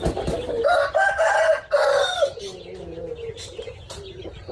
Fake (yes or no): no